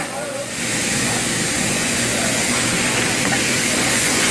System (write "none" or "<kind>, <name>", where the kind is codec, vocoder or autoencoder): vocoder, Vocos